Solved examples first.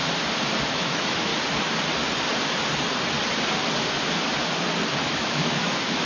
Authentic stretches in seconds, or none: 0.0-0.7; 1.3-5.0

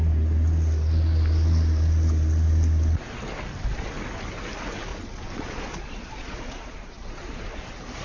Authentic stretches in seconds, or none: 0.0-4.9; 7.6-8.0